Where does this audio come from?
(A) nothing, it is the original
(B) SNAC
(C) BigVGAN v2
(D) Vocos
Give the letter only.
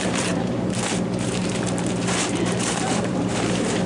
C